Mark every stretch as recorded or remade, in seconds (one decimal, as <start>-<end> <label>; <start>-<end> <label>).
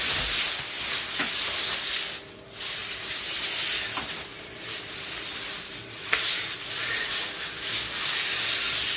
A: 0.0-2.8 recorded; 2.8-6.9 remade; 6.9-9.0 recorded